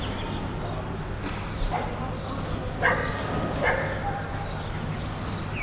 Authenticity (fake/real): real